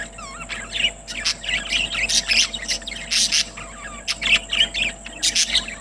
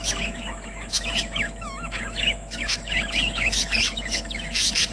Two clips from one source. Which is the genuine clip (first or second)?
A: first